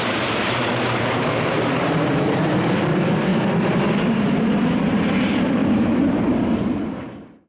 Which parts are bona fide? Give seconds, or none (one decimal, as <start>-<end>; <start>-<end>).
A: 3.3-4.9